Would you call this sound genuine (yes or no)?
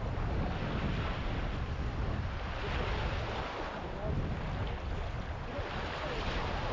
yes